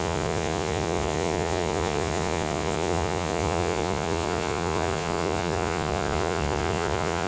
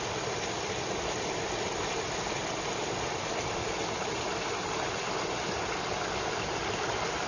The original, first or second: second